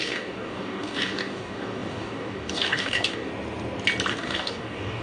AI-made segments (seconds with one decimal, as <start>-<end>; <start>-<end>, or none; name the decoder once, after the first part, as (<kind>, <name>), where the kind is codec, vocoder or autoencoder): 0.0-3.3 (codec, DAC); 4.1-5.0